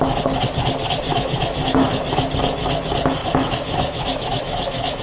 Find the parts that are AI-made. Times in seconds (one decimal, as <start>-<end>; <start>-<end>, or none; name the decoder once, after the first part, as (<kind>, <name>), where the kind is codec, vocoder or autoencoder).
1.1-1.9 (autoencoder, DAC-VAE); 3.2-5.0